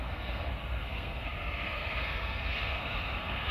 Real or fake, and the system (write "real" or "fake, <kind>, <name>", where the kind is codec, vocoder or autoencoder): fake, codec, SNAC